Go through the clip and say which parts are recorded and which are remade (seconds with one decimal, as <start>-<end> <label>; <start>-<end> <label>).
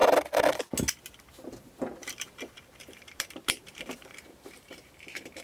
0.0-2.0 recorded; 2.0-5.4 remade